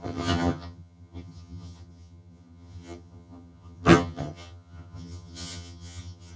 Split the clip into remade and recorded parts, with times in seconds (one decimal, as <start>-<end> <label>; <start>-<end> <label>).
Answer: 0.0-6.4 remade